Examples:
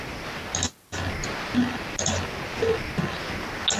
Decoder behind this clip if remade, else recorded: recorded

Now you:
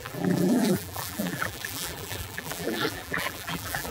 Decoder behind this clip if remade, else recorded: remade, vocoder, BigVGAN v2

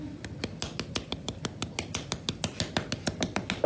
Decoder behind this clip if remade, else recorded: recorded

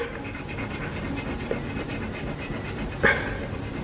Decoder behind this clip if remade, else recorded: recorded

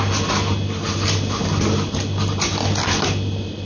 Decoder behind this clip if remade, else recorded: recorded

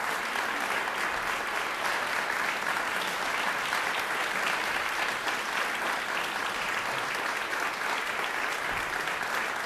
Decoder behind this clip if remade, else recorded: recorded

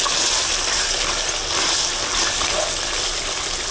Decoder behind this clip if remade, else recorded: recorded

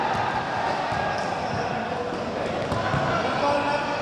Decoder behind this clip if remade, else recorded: recorded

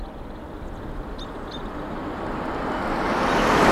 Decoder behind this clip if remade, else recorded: recorded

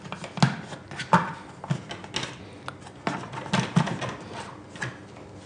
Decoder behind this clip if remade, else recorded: recorded